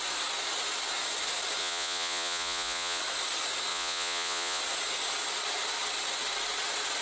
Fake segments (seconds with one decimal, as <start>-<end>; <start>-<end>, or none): 1.6-3.0; 3.7-4.6

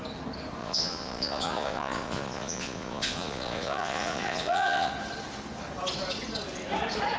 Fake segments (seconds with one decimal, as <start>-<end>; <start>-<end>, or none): 0.6-4.9

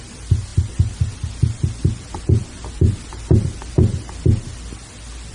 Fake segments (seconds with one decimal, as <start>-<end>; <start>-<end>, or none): none

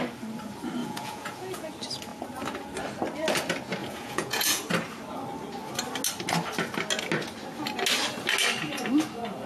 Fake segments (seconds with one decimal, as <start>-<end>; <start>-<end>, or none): 0.8-1.7; 3.8-4.6

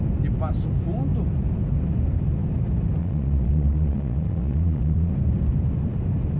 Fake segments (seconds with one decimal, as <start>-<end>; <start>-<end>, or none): 3.0-5.1

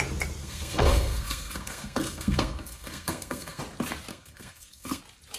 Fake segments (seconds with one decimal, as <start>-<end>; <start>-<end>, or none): 0.4-3.6; 4.1-5.0

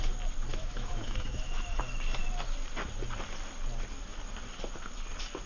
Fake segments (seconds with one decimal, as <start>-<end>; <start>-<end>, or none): 0.5-1.8